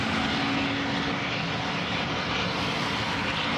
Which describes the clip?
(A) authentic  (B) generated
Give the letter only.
A